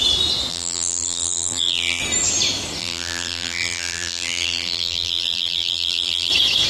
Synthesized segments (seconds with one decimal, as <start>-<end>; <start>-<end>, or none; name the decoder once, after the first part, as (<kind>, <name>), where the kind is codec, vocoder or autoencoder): 0.5-2.0 (vocoder, BigVGAN v2); 2.8-6.3